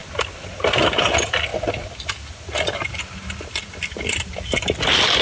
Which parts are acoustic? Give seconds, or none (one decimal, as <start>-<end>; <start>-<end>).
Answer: 0.0-5.2